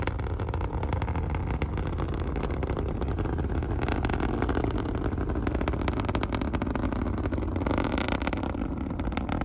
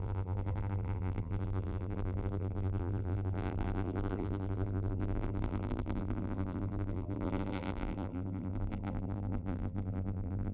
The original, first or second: first